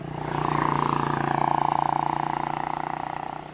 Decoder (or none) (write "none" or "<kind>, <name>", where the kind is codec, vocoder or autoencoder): none